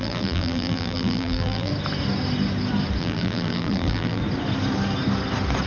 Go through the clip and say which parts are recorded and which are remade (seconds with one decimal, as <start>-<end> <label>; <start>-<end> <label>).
0.0-1.7 remade; 1.7-3.0 recorded; 3.0-4.2 remade; 4.2-5.7 recorded